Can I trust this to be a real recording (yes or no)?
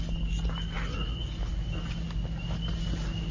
yes